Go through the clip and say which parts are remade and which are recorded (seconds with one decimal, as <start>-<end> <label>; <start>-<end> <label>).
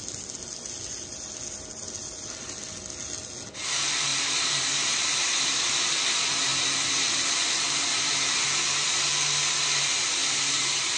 0.0-4.1 recorded; 4.1-5.7 remade; 5.7-6.5 recorded; 6.5-9.4 remade; 9.4-10.2 recorded; 10.2-11.0 remade